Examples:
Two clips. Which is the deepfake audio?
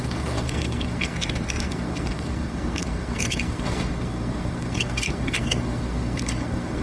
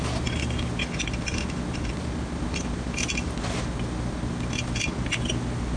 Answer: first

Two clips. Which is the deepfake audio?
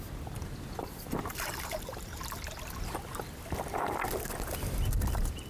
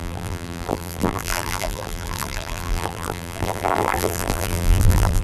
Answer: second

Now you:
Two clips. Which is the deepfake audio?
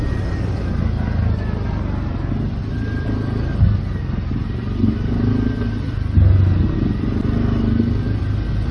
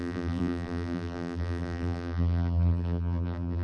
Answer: second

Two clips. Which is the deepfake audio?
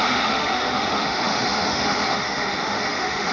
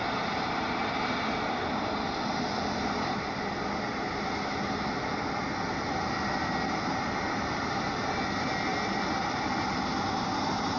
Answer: first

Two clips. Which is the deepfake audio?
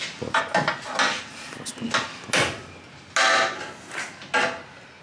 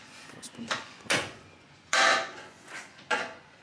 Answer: second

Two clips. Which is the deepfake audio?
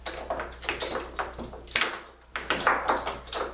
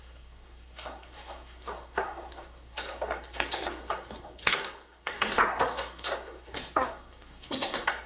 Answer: second